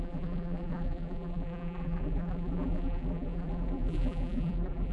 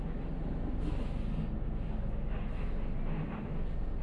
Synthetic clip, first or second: first